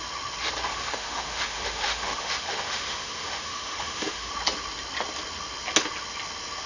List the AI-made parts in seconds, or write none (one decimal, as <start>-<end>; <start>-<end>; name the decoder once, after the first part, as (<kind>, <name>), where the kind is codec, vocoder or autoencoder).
0.7-4.3 (autoencoder, DAC-VAE)